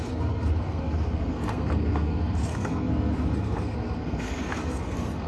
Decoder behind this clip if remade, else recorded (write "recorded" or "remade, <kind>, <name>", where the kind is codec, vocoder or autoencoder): remade, codec, SNAC